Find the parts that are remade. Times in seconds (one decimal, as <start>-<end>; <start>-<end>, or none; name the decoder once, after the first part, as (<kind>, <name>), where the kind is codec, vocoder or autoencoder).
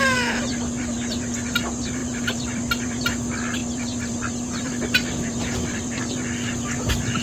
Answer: 0.0-7.2 (vocoder, BigVGAN v2)